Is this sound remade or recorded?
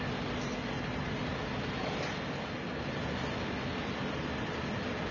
recorded